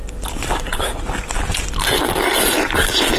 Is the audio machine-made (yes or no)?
no